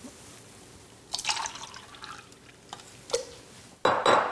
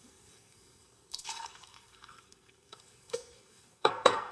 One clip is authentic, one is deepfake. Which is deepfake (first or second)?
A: second